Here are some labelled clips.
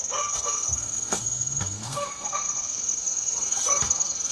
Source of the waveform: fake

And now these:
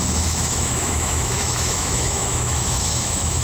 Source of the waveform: fake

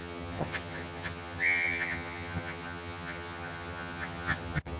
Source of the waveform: fake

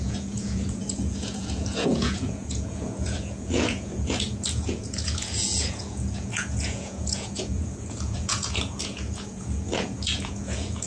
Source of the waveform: fake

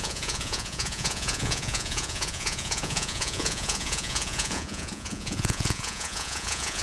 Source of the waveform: fake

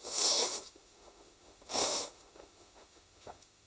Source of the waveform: fake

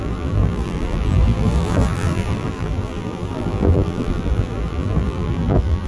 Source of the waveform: fake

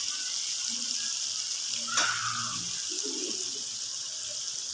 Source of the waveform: real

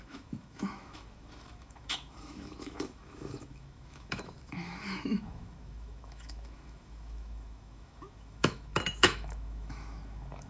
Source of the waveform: fake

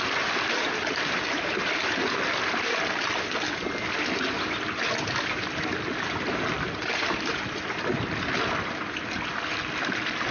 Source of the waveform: real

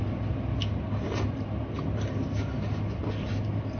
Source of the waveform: real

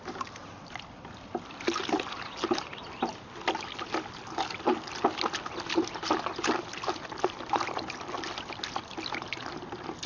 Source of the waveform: real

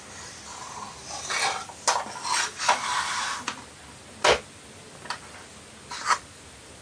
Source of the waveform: real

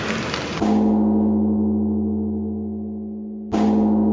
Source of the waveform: real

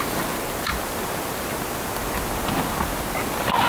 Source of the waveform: real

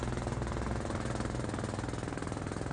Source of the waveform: real